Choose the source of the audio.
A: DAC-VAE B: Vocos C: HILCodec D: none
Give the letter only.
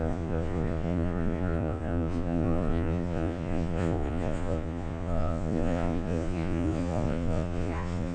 B